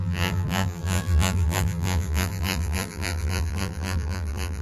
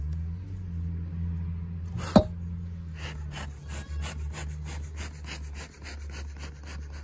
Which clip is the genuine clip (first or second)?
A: second